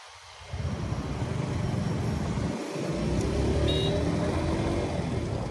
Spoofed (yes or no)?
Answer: no